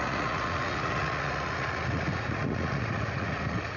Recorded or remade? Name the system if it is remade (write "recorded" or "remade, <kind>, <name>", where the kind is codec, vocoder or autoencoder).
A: remade, vocoder, Vocos